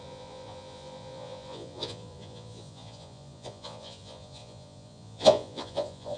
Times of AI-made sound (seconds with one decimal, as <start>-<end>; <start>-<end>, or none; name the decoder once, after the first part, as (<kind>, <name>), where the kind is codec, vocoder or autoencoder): 0.0-6.2 (vocoder, Vocos)